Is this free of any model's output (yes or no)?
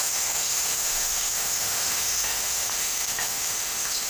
no